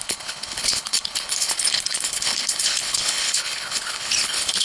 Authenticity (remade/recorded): remade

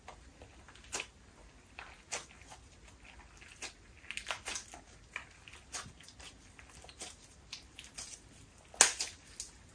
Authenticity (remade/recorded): recorded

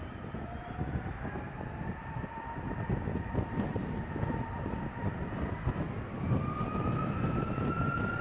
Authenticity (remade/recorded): recorded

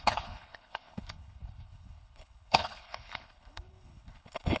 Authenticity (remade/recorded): remade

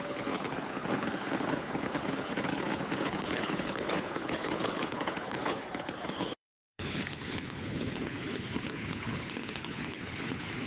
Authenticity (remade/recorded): remade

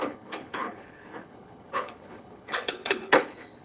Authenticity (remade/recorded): remade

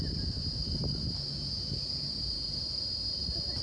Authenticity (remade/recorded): recorded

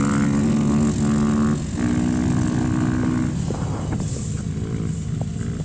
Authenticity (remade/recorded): recorded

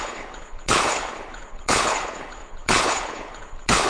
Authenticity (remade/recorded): remade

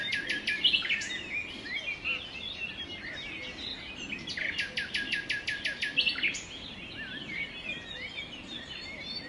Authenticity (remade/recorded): recorded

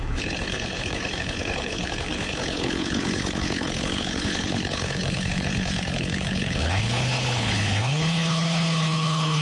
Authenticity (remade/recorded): remade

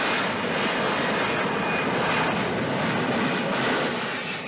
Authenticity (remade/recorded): recorded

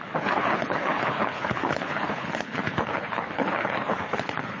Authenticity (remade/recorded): remade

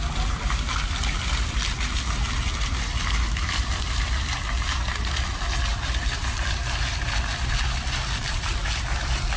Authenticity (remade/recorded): recorded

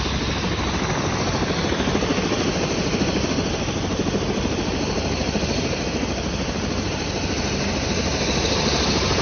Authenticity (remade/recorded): recorded